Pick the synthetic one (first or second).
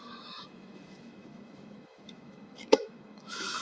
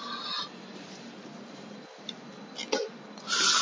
first